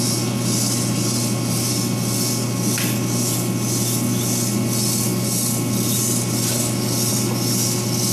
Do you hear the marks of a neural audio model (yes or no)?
no